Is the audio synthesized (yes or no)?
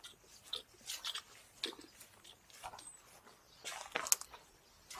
no